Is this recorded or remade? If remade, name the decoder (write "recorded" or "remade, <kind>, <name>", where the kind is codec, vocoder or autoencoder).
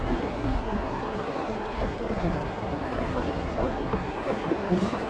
remade, codec, SNAC